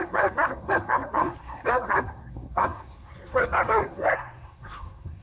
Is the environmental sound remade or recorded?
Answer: remade